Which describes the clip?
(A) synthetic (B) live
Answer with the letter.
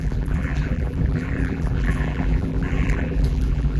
A